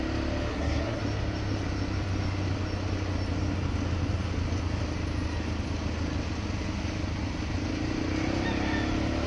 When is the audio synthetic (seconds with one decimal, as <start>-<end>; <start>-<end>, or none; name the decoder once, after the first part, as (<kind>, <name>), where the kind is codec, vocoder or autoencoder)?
0.5-1.0 (codec, SNAC)